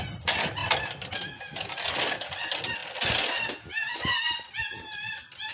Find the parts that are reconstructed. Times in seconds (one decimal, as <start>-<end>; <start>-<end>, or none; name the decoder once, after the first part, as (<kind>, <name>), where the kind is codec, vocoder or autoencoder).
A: none